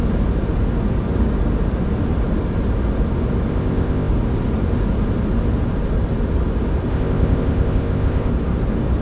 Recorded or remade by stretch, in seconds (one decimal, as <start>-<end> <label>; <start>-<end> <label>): 0.0-3.5 recorded; 3.5-4.1 remade; 4.1-6.9 recorded; 6.9-8.3 remade; 8.3-9.0 recorded